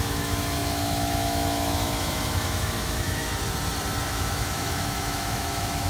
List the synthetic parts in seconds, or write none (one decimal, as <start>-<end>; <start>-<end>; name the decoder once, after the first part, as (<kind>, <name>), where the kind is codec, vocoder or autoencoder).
0.0-3.3 (autoencoder, DAC-VAE); 4.1-5.9

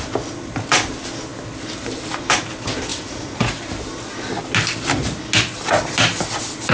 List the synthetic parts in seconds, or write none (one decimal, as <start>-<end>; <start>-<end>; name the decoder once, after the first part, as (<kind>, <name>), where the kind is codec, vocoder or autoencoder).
2.9-3.6 (vocoder, Vocos)

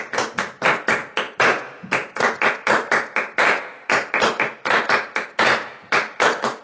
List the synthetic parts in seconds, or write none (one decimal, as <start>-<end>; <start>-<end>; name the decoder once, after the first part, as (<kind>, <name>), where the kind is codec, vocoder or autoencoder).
none

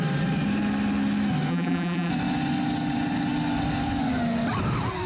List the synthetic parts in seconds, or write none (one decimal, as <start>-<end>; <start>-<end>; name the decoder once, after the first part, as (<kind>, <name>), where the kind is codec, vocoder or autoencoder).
1.5-2.1 (vocoder, BigVGAN v2)

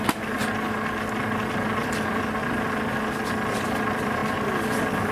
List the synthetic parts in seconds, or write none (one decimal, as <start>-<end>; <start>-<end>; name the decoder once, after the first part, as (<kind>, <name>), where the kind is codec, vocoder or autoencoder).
0.0-0.4 (vocoder, BigVGAN v2); 3.5-4.2

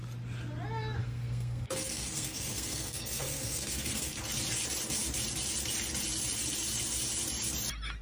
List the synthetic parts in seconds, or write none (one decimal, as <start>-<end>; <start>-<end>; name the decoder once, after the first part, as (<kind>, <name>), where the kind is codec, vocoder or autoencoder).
1.0-4.2 (codec, SNAC)

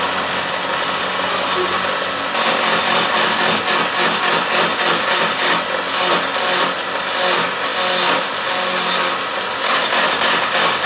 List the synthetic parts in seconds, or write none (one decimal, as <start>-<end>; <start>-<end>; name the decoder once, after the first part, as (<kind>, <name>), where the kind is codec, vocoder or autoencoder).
none

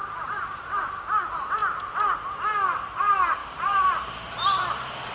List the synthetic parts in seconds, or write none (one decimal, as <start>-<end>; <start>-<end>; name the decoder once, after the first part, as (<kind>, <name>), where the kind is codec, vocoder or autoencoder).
0.0-0.9 (vocoder, BigVGAN v2); 3.4-5.1